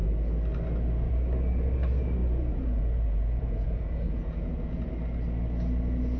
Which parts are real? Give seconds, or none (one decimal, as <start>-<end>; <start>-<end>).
0.0-2.2; 4.9-6.2